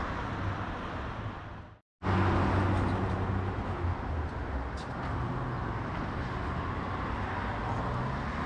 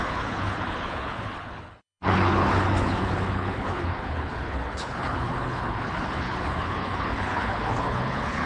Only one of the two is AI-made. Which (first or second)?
second